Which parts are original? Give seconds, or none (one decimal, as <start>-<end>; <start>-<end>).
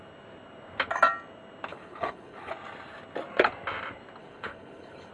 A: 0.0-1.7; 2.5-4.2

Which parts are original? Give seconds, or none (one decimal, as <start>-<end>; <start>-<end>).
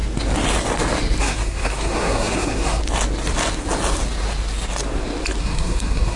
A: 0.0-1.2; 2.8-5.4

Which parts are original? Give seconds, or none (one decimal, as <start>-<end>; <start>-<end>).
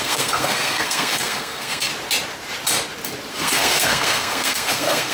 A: 1.9-3.3